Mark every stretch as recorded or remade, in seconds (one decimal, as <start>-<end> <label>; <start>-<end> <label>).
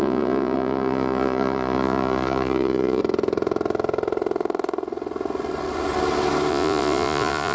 0.0-3.0 remade; 3.0-6.5 recorded; 6.5-7.5 remade